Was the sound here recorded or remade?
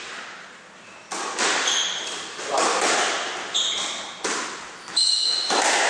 recorded